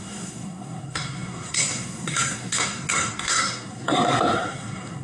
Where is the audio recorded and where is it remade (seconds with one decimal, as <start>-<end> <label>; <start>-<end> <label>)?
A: 0.0-5.0 remade